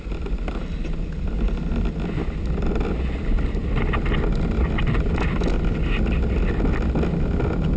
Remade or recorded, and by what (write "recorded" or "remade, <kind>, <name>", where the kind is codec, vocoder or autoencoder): recorded